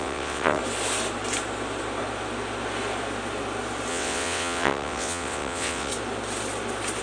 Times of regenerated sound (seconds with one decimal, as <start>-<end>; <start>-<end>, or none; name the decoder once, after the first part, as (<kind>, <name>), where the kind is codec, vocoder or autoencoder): 0.0-0.6 (vocoder, WaveNeXt); 3.9-5.9